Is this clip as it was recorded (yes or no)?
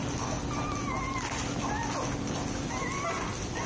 yes